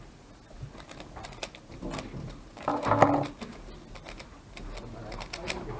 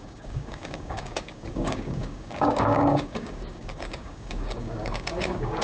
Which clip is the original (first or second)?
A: first